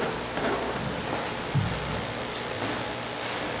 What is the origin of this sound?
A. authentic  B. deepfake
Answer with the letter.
A